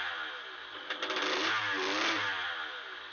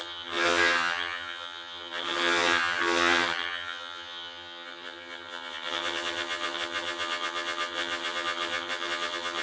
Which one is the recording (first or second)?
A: first